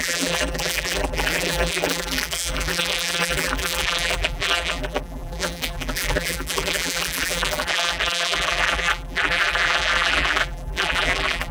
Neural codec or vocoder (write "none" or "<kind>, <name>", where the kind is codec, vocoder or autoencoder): vocoder, BigVGAN v2